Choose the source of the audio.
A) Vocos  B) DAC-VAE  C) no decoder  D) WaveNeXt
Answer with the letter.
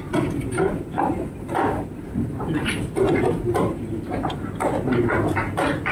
C